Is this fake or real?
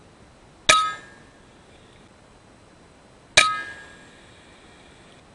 real